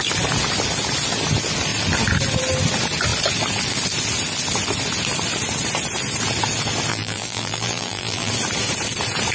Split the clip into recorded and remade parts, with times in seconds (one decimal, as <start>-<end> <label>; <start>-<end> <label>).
0.0-6.9 recorded; 6.9-8.3 remade; 8.3-9.3 recorded